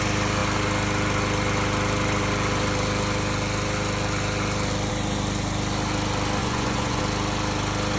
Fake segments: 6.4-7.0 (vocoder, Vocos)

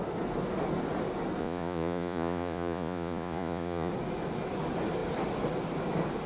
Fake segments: 1.4-3.9 (vocoder, Vocos)

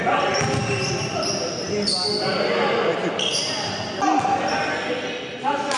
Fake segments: none

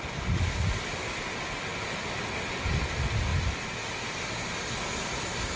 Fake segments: none

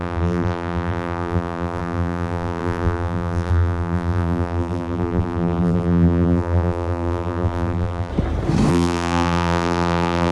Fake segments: 0.0-8.1 (vocoder, BigVGAN v2); 8.7-10.3

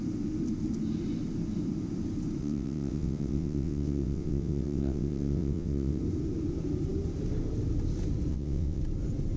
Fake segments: 2.4-6.0 (vocoder, WaveNeXt); 8.3-8.8